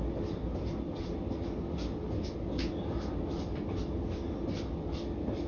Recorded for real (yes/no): yes